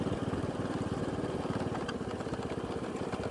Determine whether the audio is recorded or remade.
recorded